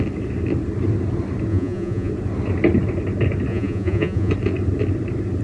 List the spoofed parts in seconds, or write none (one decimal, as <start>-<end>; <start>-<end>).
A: 1.5-2.1; 3.5-4.3